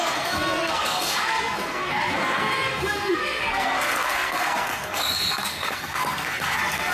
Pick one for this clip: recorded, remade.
remade